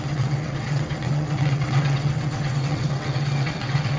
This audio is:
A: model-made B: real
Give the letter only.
A